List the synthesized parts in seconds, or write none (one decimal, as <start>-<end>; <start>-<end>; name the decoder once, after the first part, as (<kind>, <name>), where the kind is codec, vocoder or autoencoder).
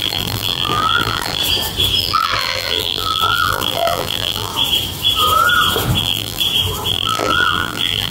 0.0-1.4 (vocoder, BigVGAN v2); 2.0-4.5; 6.0-6.4; 6.9-8.1